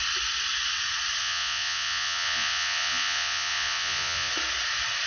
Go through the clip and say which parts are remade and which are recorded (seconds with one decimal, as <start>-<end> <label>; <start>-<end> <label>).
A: 0.0-1.2 recorded; 1.2-4.3 remade; 4.3-5.1 recorded